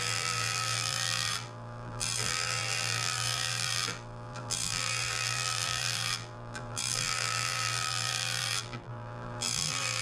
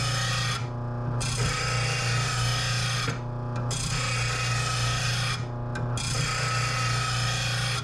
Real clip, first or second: second